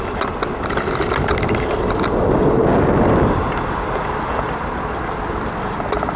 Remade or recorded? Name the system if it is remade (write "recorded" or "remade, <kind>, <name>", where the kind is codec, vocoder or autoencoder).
recorded